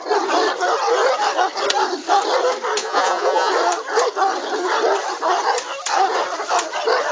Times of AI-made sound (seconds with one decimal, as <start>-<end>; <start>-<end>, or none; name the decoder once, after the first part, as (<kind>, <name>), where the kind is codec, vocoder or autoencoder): 2.8-3.5 (vocoder, Vocos)